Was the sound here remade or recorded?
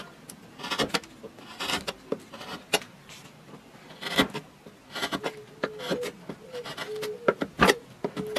recorded